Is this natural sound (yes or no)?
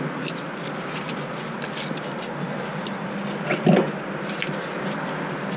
yes